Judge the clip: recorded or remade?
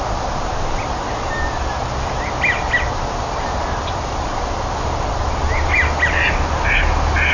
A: recorded